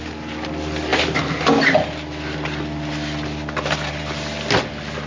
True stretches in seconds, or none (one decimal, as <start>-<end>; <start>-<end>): 0.0-5.1